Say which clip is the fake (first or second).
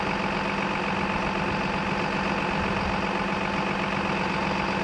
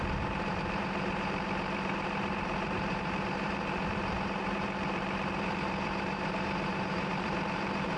second